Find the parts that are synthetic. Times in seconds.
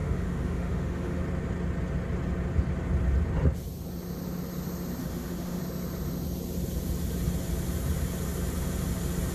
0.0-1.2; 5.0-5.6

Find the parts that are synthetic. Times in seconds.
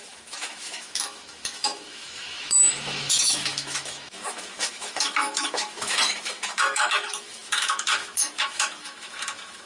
0.0-9.7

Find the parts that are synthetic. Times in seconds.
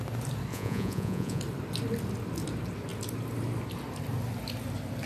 0.5-1.4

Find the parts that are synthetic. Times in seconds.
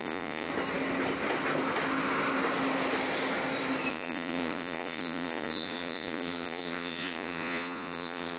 0.0-0.5; 3.9-8.4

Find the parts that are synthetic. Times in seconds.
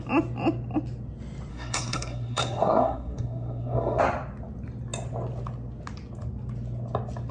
1.5-4.0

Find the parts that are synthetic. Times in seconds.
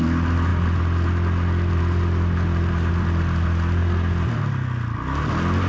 none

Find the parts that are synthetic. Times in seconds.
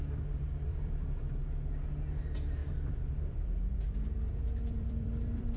0.7-1.2; 2.6-5.6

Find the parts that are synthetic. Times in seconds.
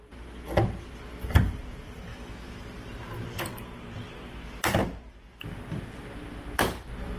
2.1-2.6